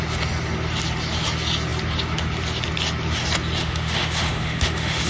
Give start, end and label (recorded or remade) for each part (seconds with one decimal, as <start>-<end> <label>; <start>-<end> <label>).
0.0-3.6 recorded; 3.6-5.1 remade